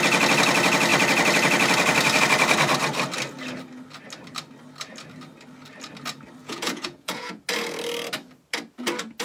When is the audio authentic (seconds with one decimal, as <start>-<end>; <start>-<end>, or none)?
0.0-6.4; 7.4-9.2